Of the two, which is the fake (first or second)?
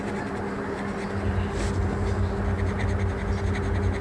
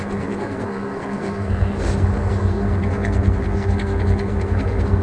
second